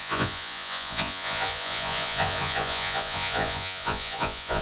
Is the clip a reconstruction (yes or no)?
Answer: yes